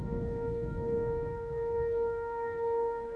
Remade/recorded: remade